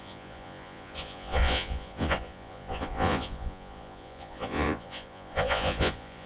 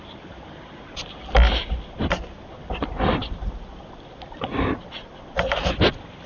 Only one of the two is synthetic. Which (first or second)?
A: first